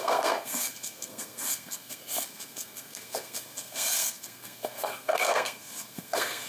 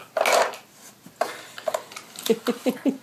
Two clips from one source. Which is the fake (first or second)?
first